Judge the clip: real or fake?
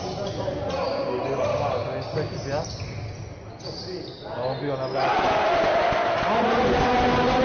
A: real